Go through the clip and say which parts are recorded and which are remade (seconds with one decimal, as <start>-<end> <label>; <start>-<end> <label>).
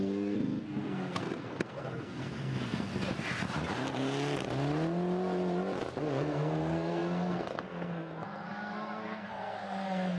0.0-2.9 remade; 2.9-6.0 recorded; 6.0-10.2 remade